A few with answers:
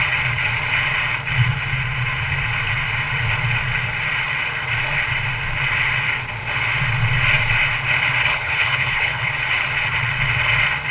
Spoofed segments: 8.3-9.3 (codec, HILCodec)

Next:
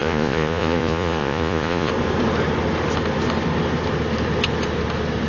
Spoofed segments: 0.0-1.9 (vocoder, Vocos)

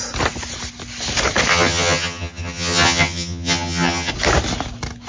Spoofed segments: 1.5-4.1 (vocoder, HiFi-GAN)

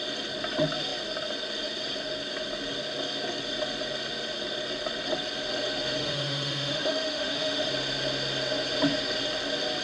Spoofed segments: 6.0-7.7 (autoencoder, DAC-VAE)

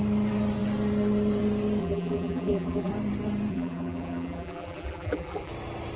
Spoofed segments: 1.8-2.9 (vocoder, BigVGAN v2); 3.5-5.5

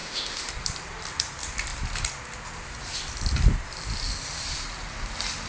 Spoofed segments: 0.0-0.5 (autoencoder, DAC-VAE)

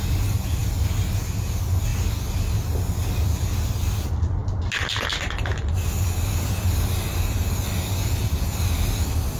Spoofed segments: none

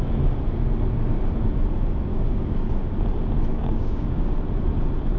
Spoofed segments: 2.1-2.7 (codec, DAC); 3.5-4.3